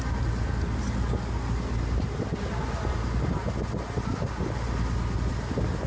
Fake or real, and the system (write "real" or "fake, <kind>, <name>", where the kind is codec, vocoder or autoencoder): real